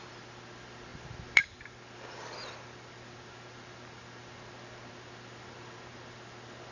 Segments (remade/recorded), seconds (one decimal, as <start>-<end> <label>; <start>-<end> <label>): 0.0-0.9 recorded; 0.9-4.9 remade; 4.9-6.7 recorded